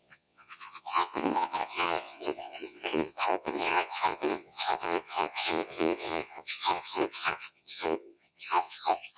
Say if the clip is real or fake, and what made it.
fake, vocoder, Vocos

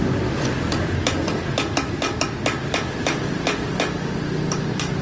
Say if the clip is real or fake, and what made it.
real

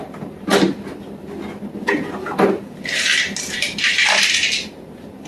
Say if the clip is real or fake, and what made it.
real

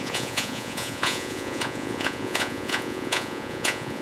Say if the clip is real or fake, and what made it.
fake, vocoder, Vocos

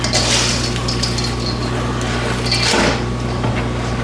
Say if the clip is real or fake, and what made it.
real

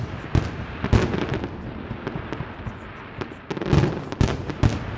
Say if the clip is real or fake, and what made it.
real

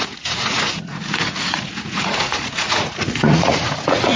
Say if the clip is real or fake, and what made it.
fake, vocoder, Vocos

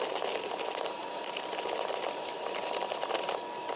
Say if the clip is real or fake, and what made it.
real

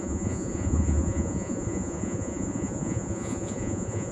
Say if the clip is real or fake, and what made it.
fake, vocoder, Vocos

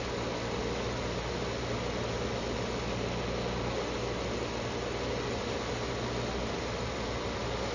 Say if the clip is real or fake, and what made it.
real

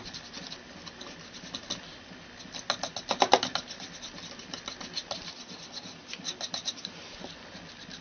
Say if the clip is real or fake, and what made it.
real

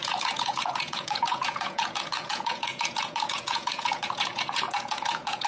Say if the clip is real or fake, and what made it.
fake, vocoder, Vocos